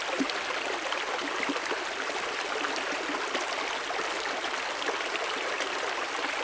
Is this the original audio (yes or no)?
yes